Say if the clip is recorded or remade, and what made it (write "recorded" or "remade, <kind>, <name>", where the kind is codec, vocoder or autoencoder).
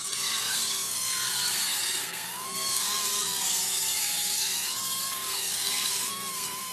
remade, codec, SNAC